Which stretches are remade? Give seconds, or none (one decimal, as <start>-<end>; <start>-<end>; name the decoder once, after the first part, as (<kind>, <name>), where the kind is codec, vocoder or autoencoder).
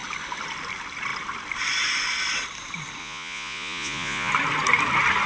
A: 3.0-4.3 (vocoder, Vocos)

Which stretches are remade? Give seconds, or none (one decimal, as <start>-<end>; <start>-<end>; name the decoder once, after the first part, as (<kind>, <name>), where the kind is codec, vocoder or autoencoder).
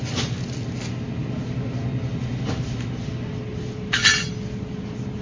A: none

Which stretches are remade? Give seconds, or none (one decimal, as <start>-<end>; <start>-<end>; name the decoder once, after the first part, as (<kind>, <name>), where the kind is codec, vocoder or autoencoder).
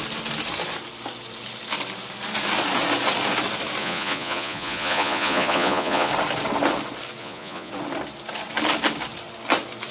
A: 3.8-6.1 (vocoder, Vocos); 7.2-7.7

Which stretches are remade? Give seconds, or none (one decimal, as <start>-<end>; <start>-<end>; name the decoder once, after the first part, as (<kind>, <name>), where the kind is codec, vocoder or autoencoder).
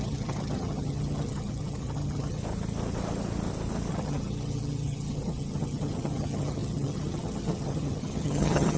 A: 0.0-2.4 (vocoder, HiFi-GAN); 3.9-8.8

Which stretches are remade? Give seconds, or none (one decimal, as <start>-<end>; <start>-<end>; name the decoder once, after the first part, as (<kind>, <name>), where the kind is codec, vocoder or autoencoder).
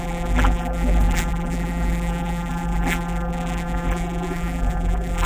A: 0.0-5.3 (vocoder, BigVGAN v2)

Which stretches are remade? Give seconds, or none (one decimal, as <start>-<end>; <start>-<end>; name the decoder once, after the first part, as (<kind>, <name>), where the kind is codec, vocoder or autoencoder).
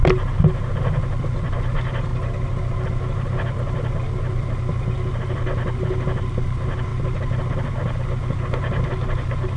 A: none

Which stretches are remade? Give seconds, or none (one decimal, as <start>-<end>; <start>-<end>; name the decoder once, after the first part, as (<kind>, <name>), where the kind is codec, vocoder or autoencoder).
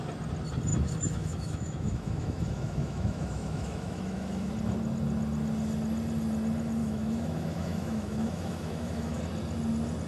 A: 0.7-4.5 (autoencoder, DAC-VAE); 6.8-9.2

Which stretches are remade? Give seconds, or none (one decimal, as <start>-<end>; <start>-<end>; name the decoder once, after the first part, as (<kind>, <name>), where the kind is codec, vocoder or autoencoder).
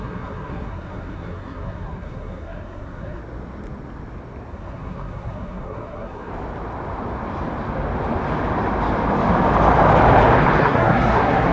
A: 0.0-3.2 (codec, SNAC); 4.5-6.3; 10.6-11.5